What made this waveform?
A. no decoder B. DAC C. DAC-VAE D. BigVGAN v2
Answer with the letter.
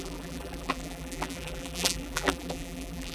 D